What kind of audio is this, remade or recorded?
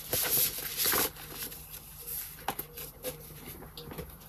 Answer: recorded